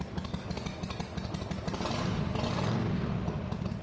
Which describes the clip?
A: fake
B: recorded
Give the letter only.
B